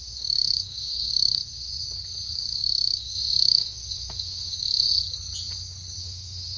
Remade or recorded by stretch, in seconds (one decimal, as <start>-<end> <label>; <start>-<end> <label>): 0.0-1.7 remade; 1.7-2.4 recorded; 2.4-4.9 remade; 4.9-6.0 recorded; 6.0-6.6 remade